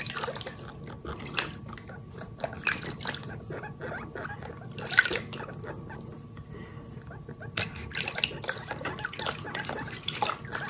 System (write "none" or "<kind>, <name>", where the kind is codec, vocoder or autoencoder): none